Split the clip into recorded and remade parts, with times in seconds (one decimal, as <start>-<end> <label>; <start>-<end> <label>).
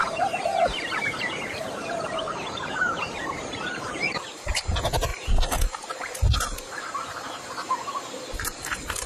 0.0-5.1 remade; 5.1-8.4 recorded; 8.4-9.1 remade